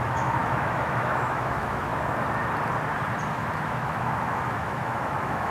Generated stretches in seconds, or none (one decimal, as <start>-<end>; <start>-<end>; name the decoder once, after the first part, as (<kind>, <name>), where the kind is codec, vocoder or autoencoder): 0.0-1.9 (autoencoder, DAC-VAE); 3.3-5.5